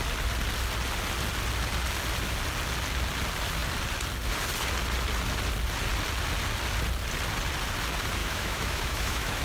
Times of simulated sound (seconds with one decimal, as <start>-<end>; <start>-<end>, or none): 8.2-9.4